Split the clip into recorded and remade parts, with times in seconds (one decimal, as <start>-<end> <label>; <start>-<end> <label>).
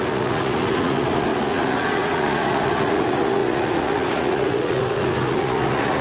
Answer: 0.0-6.0 remade